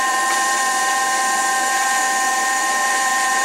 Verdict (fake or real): fake